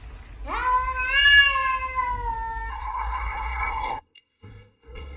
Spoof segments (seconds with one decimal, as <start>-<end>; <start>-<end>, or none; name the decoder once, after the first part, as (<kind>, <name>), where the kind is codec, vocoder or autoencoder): 2.7-5.2 (codec, SNAC)